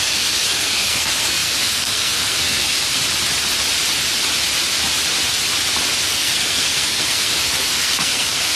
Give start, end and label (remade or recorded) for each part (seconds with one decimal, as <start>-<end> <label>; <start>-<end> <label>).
0.0-3.0 remade; 3.0-6.0 recorded; 6.0-8.6 remade